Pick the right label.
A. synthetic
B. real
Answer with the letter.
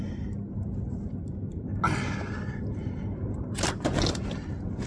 B